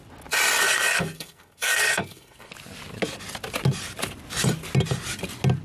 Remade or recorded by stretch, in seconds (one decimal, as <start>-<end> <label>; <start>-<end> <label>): 0.0-0.6 recorded; 0.6-2.5 remade; 2.5-5.6 recorded